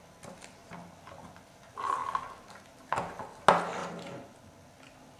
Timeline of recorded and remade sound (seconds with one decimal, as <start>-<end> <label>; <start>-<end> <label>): 0.0-5.2 recorded